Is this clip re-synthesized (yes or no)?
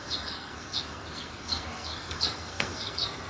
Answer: yes